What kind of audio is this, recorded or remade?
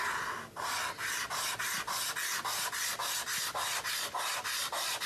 recorded